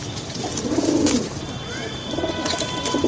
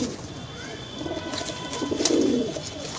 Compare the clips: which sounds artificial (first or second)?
second